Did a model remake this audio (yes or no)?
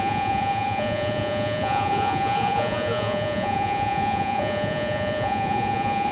yes